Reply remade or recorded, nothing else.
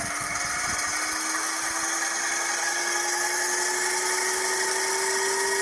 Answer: recorded